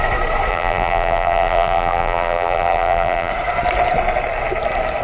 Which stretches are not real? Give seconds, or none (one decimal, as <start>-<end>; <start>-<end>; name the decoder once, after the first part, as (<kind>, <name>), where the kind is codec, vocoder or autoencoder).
0.5-3.3 (vocoder, BigVGAN v2)